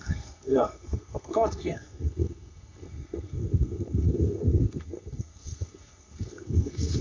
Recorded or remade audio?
remade